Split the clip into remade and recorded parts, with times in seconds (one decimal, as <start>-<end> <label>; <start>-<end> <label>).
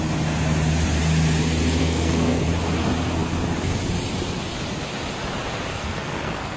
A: 0.0-1.8 recorded; 1.8-2.4 remade; 2.4-5.7 recorded; 5.7-6.6 remade